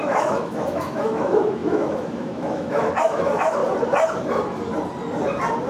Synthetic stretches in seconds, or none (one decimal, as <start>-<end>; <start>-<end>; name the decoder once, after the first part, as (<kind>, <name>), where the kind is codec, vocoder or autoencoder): 0.0-3.6 (autoencoder, DAC-VAE)